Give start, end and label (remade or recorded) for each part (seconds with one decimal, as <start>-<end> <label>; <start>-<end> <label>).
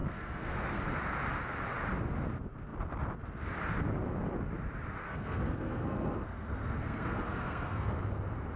0.0-0.8 remade; 0.8-5.0 recorded; 5.0-8.0 remade; 8.0-8.6 recorded